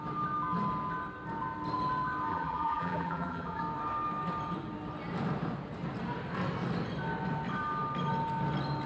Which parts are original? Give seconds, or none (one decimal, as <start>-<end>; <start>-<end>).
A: 0.0-2.3; 3.6-8.9